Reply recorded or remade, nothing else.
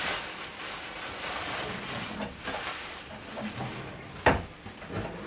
recorded